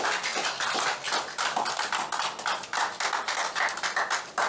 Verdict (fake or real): real